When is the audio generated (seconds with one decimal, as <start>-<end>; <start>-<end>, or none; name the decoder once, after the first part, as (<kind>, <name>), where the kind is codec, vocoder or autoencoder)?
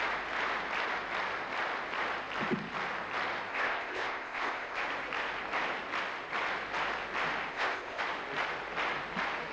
3.5-4.8 (codec, ZipCodec); 7.5-8.0